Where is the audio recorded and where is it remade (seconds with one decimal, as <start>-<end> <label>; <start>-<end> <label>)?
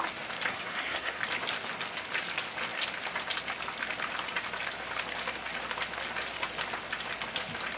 0.0-0.5 recorded; 0.5-1.2 remade; 1.2-7.8 recorded